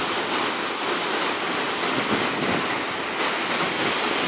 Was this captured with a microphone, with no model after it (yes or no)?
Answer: yes